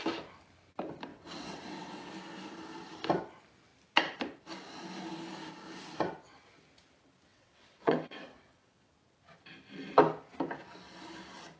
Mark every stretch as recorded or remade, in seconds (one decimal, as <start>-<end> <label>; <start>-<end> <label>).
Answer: 0.0-1.1 recorded; 1.1-2.1 remade; 2.1-7.3 recorded; 7.3-8.9 remade; 8.9-11.6 recorded